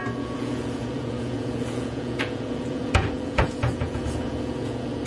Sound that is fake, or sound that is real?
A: fake